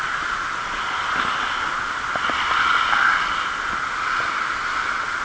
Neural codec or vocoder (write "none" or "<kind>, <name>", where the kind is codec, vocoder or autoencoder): none